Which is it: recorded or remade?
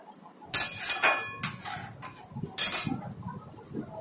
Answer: recorded